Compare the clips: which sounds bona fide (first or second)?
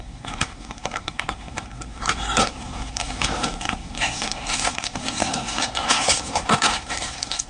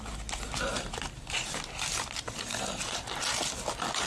second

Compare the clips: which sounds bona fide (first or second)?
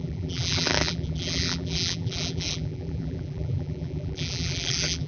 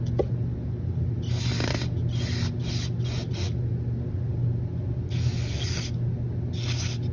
second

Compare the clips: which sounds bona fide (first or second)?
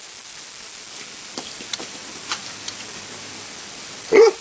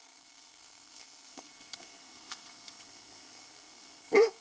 first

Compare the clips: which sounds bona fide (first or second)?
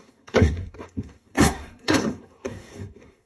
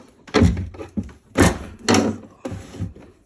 second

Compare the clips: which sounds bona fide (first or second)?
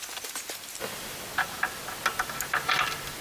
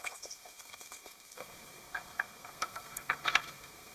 first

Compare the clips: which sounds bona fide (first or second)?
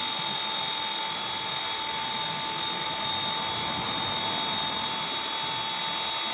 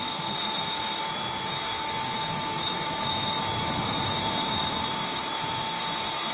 first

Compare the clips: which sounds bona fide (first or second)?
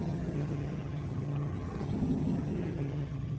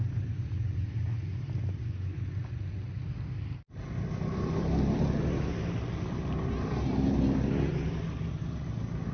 second